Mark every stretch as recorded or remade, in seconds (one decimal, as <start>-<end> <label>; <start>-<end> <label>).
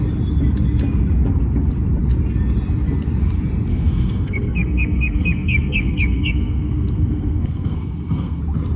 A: 0.0-3.7 recorded; 3.7-8.4 remade; 8.4-8.8 recorded